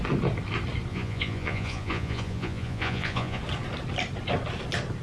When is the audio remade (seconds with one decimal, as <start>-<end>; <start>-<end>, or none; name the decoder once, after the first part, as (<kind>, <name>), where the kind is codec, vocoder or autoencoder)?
0.9-3.4 (vocoder, Vocos)